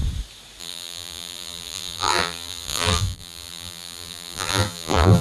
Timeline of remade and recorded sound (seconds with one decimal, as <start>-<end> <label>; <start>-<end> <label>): 0.0-0.6 recorded; 0.6-5.2 remade